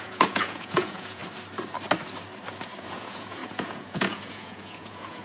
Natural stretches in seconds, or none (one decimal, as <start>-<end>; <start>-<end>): 1.2-2.8